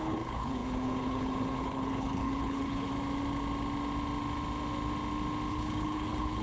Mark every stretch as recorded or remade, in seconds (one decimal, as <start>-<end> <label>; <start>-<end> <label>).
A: 0.0-2.9 remade; 2.9-5.5 recorded; 5.5-6.4 remade